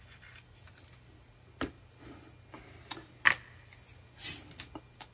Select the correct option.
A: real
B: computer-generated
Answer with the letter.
A